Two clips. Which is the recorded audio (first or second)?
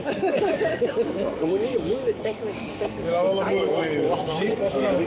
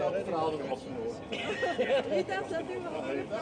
second